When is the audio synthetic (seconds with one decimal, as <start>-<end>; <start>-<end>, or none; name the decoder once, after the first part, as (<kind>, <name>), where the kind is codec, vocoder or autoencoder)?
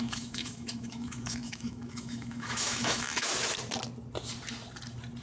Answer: 0.0-3.3 (autoencoder, DAC-VAE)